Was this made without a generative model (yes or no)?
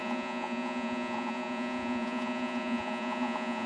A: no